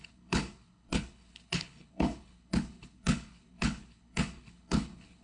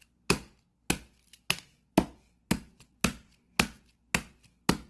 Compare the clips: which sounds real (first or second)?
second